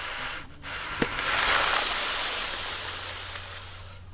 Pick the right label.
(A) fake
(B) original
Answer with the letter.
B